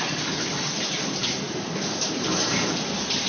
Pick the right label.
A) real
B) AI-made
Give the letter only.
A